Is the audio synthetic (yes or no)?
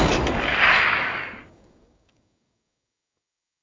yes